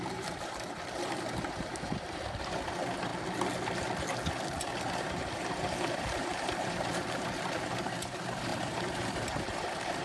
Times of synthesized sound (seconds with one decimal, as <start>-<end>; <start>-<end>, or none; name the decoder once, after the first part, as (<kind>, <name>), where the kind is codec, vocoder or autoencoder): 0.0-3.1 (vocoder, BigVGAN v2); 4.9-10.0